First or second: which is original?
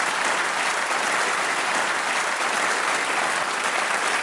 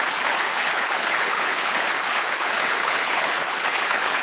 first